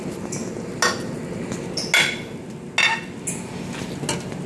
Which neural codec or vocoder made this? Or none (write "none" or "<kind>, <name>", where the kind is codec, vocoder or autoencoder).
none